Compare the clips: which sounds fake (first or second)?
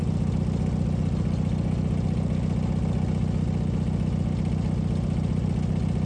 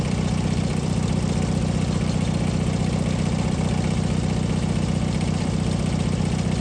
second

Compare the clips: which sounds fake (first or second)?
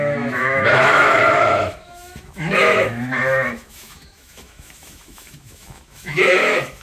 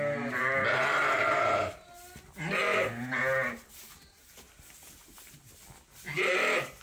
first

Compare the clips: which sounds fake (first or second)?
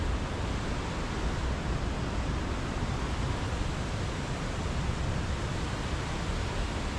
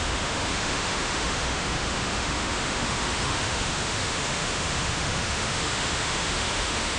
second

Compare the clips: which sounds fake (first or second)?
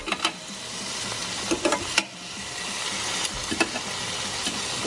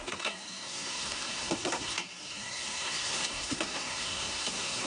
second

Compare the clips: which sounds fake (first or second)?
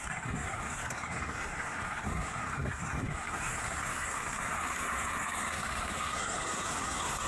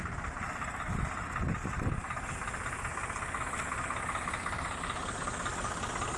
first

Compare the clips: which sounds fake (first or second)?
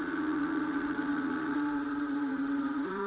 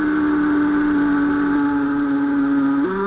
first